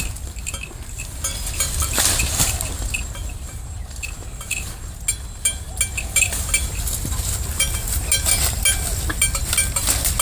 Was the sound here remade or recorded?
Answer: recorded